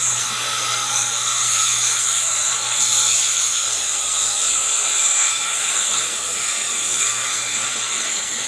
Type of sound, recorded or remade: remade